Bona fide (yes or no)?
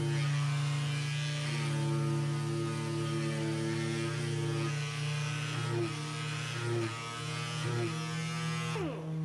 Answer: yes